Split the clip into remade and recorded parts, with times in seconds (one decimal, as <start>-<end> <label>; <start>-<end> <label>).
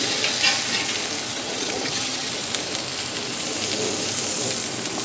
0.0-1.3 recorded; 1.3-2.3 remade; 2.3-5.0 recorded